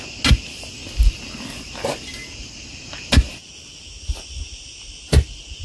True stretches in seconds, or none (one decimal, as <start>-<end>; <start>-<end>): 0.0-5.6